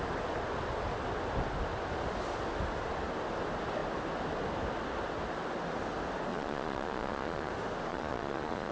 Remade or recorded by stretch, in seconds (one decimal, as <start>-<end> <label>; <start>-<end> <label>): 0.0-6.3 recorded; 6.3-7.5 remade; 7.5-7.9 recorded; 7.9-8.7 remade